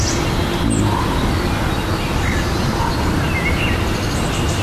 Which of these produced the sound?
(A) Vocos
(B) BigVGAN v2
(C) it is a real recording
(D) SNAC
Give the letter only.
C